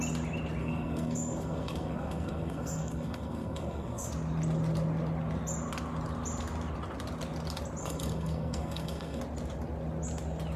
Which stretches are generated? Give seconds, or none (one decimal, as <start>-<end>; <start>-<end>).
0.6-4.1; 7.8-9.2